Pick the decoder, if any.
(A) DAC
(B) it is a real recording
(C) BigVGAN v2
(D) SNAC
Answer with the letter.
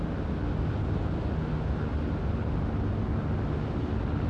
B